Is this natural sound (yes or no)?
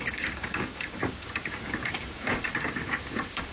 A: no